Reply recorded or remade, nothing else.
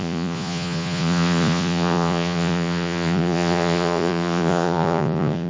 remade